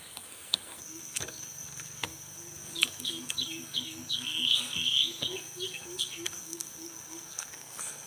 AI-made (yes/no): yes